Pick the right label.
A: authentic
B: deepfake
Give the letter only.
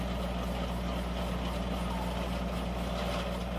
A